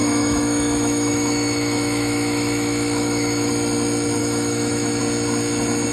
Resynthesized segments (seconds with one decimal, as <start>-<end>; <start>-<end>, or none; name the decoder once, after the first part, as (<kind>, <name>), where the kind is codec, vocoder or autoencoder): 0.0-3.5 (autoencoder, DAC-VAE); 4.2-5.0